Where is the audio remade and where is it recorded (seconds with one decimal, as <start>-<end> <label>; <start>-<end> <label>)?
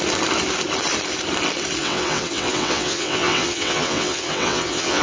0.0-1.8 recorded; 1.8-5.0 remade